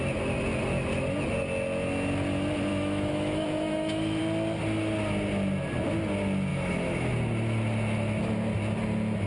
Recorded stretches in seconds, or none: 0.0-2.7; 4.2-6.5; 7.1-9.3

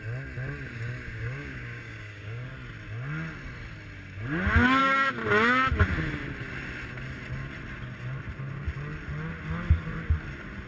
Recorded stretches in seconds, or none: 0.0-0.7; 2.5-4.8; 5.2-10.7